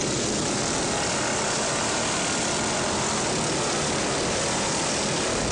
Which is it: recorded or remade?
recorded